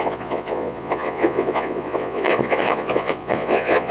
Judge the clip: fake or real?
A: fake